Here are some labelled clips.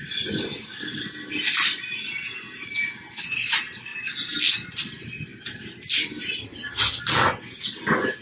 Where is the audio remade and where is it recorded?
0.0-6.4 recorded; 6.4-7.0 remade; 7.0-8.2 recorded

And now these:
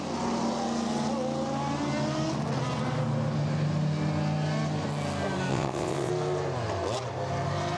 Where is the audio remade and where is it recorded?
0.0-5.5 recorded; 5.5-6.1 remade; 6.1-7.8 recorded

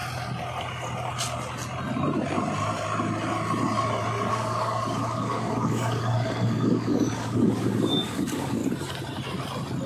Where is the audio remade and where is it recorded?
0.0-4.3 recorded; 4.3-8.6 remade; 8.6-9.9 recorded

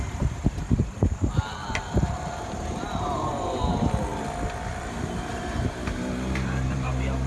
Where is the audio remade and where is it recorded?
0.0-4.1 remade; 4.1-4.7 recorded; 4.7-7.3 remade

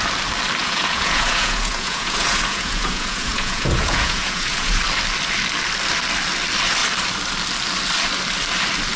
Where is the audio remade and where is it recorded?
0.0-0.6 recorded; 0.6-4.8 remade; 4.8-9.0 recorded